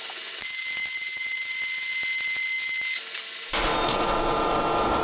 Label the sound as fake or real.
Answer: real